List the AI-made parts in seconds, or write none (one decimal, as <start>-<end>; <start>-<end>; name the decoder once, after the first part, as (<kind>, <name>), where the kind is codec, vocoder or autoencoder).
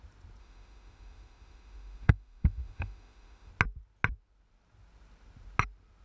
0.4-3.5 (autoencoder, DAC-VAE)